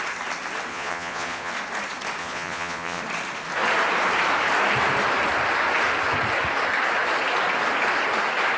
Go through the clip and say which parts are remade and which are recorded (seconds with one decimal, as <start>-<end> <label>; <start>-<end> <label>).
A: 0.0-0.7 recorded; 0.7-1.5 remade; 1.5-2.2 recorded; 2.2-3.0 remade; 3.0-8.6 recorded